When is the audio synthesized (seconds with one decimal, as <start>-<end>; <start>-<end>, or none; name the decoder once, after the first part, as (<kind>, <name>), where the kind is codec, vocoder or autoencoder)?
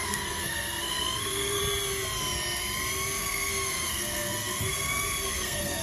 0.0-1.6 (codec, SNAC); 3.2-5.8